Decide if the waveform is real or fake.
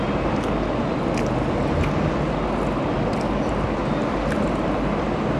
real